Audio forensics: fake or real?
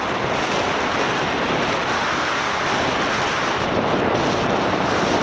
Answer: real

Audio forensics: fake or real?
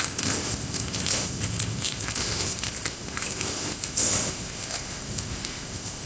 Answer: fake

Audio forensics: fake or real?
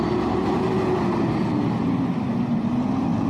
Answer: real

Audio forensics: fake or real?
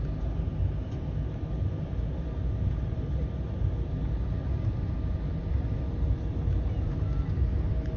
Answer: real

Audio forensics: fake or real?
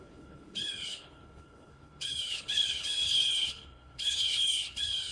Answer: fake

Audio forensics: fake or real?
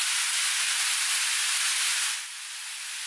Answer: real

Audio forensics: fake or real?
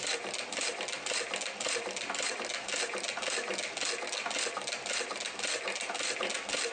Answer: real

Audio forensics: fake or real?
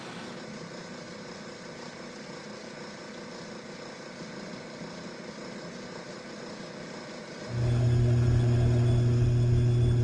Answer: real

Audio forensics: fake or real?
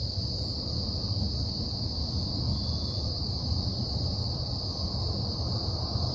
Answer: real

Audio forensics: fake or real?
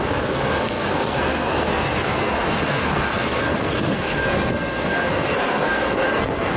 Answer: fake